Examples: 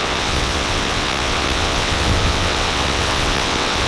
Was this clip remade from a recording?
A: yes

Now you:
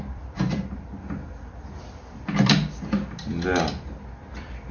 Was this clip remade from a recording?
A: yes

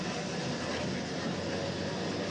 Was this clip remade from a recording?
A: no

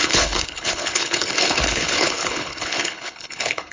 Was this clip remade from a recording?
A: yes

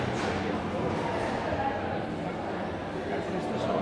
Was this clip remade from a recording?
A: no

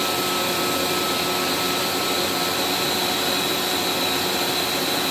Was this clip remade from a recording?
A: yes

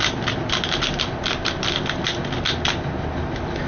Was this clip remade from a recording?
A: no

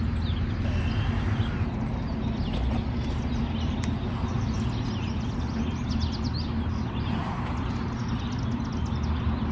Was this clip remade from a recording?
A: no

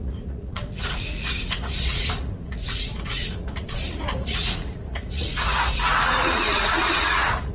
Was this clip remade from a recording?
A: yes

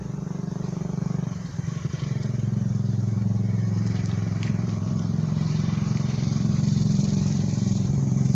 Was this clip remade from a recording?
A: yes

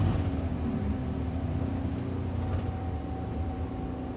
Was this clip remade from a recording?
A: no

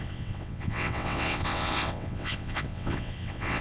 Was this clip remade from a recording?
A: yes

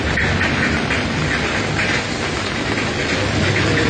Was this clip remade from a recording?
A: no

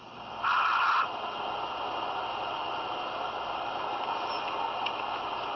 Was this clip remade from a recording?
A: no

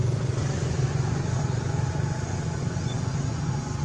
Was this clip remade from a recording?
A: yes